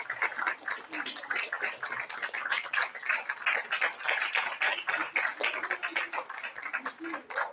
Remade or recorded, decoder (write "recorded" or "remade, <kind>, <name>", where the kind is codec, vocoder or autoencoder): recorded